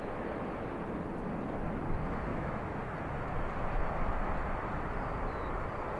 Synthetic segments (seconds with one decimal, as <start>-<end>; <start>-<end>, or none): 2.3-2.9